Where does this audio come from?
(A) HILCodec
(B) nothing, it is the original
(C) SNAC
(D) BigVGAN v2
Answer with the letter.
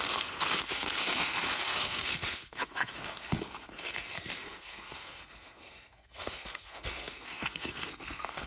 C